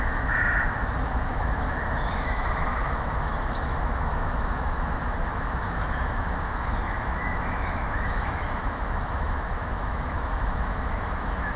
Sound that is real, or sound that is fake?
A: fake